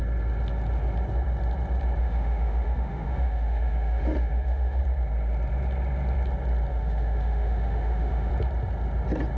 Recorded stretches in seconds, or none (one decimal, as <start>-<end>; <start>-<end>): 0.0-2.0; 4.8-6.7; 8.3-9.4